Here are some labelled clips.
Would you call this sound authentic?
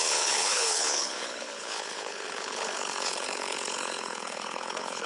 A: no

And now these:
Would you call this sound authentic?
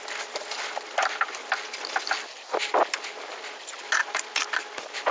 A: yes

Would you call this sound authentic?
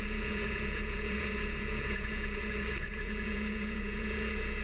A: no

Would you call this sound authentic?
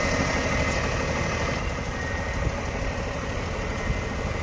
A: yes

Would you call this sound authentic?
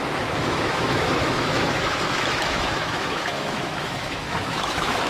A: no